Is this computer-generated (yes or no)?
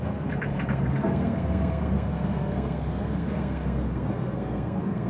yes